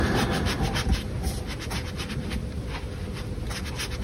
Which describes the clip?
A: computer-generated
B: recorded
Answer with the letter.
B